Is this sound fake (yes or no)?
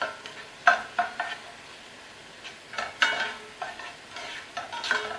no